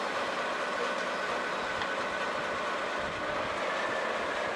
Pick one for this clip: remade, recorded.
recorded